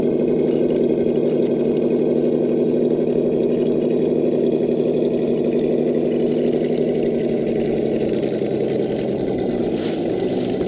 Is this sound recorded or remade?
recorded